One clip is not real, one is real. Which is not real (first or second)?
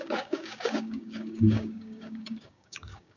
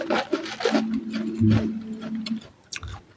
first